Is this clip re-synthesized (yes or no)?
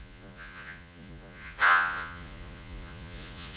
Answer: yes